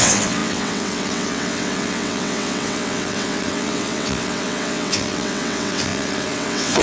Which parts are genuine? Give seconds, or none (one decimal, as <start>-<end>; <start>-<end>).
none

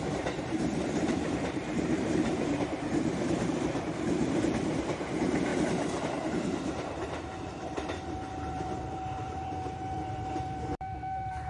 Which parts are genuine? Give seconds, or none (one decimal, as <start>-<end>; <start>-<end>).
5.5-6.1

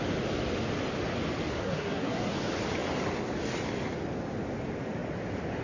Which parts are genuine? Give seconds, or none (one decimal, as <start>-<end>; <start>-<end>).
0.0-1.5; 2.3-5.6

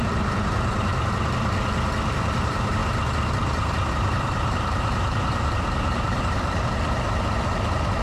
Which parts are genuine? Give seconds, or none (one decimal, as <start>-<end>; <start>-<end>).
0.9-2.4; 2.8-3.9

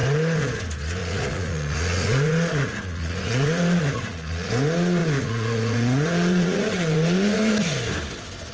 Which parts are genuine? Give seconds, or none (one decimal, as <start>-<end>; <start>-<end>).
0.0-1.0; 4.5-5.0; 7.6-8.5